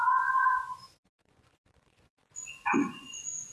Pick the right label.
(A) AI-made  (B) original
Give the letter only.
A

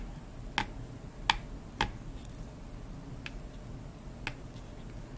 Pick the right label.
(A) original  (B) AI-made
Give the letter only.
A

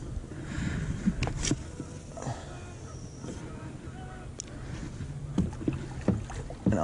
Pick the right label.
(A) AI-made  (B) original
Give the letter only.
B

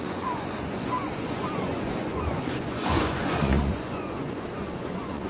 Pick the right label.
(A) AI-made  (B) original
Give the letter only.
A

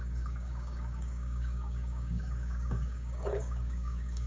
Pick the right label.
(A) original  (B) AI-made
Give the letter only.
B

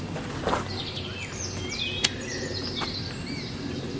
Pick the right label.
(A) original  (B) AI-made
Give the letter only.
A